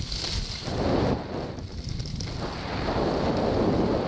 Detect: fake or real real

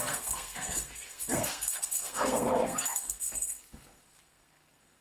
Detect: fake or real fake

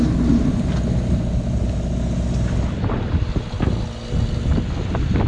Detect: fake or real real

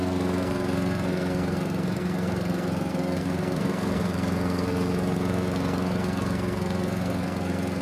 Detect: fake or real fake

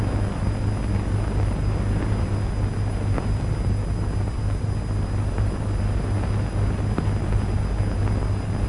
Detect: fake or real real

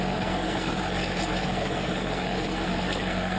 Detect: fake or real fake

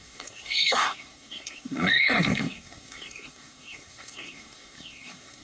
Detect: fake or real fake